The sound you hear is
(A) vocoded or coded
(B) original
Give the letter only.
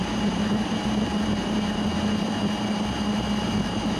B